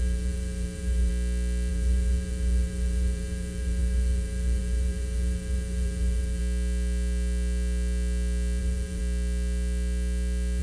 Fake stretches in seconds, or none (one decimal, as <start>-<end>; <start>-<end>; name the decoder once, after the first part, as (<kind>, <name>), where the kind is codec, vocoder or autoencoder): 0.0-1.1 (vocoder, BigVGAN v2); 1.7-6.4; 8.6-9.0